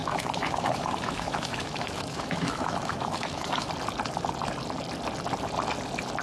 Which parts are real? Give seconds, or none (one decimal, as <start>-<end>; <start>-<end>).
3.7-6.2